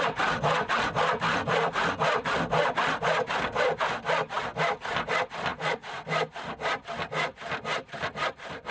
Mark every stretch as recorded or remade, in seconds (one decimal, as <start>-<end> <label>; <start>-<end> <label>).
0.0-5.5 recorded; 5.5-6.0 remade; 6.0-8.7 recorded